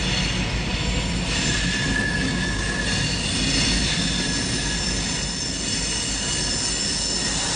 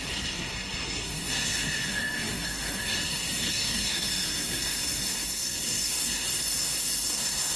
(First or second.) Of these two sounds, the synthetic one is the second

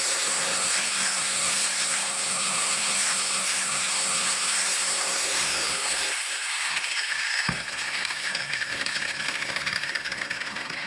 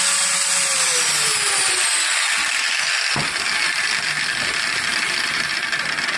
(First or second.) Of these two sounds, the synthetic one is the first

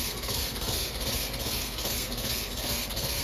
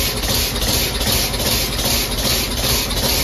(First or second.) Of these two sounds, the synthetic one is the first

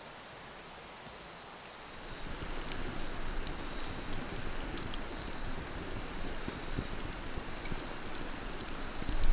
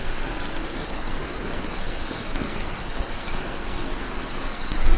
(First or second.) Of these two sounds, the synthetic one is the second